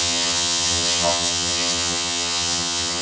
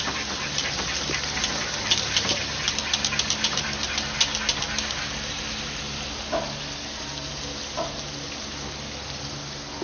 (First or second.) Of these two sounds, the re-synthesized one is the first